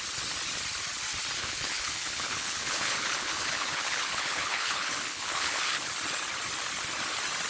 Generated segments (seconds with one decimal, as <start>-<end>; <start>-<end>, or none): 1.4-5.9